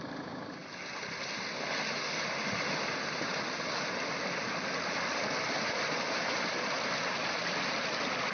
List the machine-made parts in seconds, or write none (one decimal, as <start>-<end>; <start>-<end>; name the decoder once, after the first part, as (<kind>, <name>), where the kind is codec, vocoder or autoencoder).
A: none